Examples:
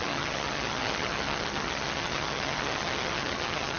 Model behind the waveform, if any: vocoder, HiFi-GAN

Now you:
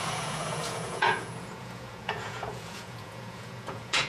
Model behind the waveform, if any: vocoder, Vocos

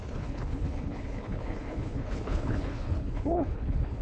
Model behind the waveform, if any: codec, HILCodec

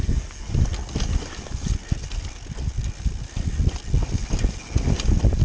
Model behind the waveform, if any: none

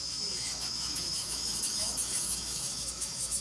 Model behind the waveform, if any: autoencoder, DAC-VAE